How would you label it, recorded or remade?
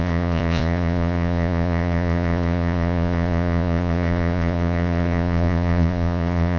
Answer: remade